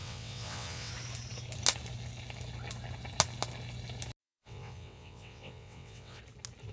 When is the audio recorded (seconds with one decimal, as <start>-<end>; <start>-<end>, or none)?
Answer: 0.9-4.2; 6.2-6.7

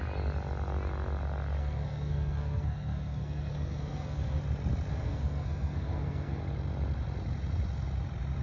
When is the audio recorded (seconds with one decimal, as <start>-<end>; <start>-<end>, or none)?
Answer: 0.0-1.6; 4.4-4.9; 6.4-8.4

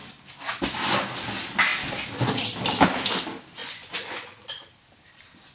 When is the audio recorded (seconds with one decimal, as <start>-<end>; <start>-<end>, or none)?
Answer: 0.0-3.6; 4.4-5.5

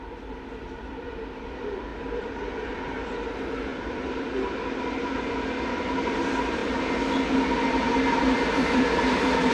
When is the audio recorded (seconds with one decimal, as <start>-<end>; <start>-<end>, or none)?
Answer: 6.6-7.8

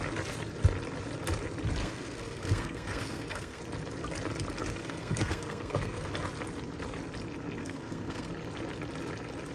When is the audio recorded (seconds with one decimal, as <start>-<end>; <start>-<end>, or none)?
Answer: 0.0-1.8; 3.6-4.8; 6.1-7.6; 8.3-9.5

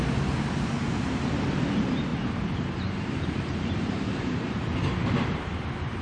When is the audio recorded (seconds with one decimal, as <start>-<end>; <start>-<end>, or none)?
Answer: 0.0-2.1

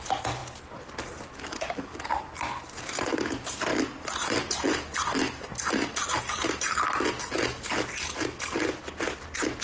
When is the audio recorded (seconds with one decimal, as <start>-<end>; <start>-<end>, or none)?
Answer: 0.0-9.6

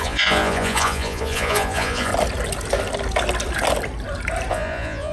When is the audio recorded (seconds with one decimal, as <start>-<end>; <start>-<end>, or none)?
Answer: 2.1-4.5